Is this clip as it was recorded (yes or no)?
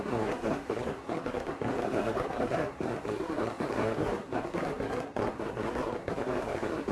no